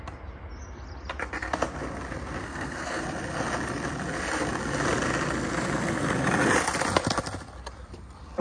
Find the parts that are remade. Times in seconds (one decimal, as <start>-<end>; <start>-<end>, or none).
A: 2.4-3.0